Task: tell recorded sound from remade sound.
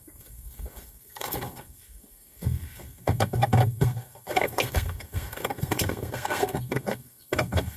remade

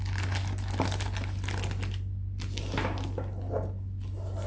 recorded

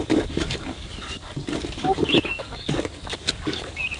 remade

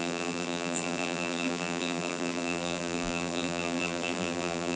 remade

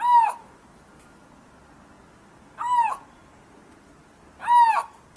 recorded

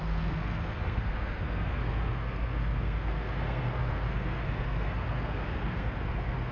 remade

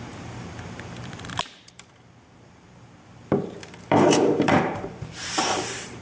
remade